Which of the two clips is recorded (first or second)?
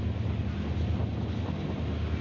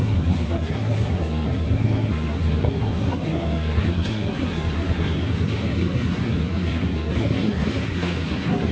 first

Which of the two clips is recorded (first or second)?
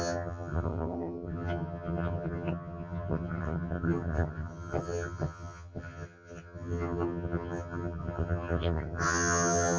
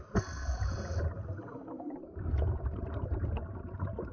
second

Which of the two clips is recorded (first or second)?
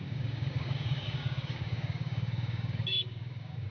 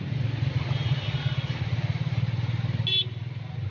second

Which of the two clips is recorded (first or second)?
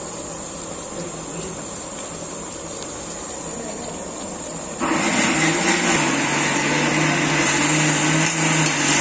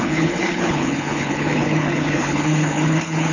first